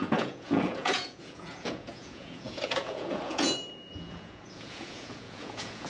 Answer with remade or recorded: remade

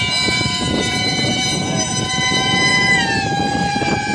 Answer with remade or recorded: remade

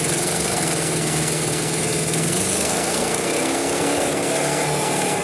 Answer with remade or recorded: remade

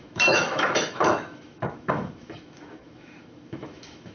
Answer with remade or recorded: remade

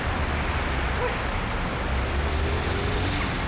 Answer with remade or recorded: recorded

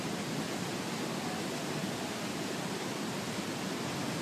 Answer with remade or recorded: recorded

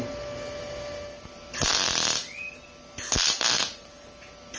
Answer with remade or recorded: recorded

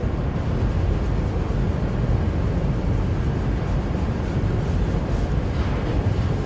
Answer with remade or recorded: recorded